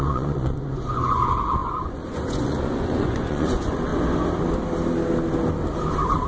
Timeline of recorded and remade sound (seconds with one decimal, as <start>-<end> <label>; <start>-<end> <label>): 0.0-3.9 remade; 3.9-6.3 recorded